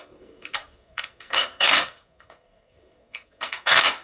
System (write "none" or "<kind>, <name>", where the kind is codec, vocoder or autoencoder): codec, SNAC